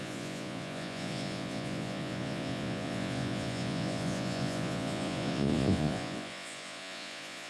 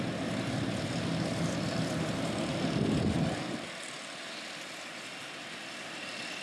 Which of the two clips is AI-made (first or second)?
first